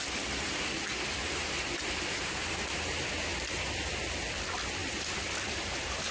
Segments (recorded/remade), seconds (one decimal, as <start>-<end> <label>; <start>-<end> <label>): 0.0-3.3 recorded; 3.3-3.9 remade; 3.9-4.8 recorded; 4.8-6.1 remade